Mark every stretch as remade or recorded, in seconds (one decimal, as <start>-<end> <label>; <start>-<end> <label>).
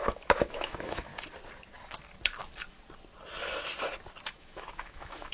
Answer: 0.0-1.1 remade; 1.1-4.3 recorded; 4.3-5.3 remade